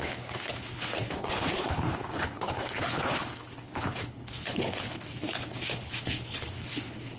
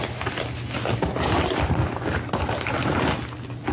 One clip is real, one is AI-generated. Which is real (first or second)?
second